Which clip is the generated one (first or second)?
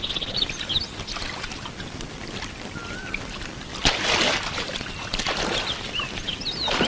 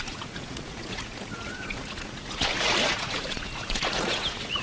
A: second